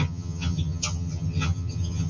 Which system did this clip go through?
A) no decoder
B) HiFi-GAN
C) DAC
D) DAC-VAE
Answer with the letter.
B